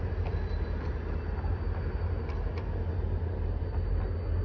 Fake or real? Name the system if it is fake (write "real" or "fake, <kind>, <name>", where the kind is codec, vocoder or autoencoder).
real